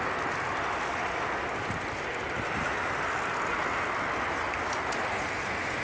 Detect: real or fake real